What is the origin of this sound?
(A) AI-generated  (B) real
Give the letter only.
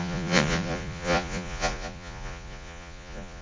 A